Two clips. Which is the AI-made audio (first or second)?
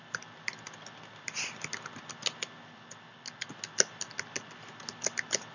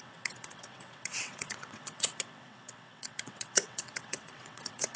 second